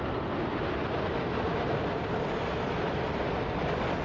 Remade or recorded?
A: recorded